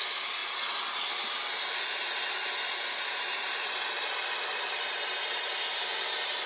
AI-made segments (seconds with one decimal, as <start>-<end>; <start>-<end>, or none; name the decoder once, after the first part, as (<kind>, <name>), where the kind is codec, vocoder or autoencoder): none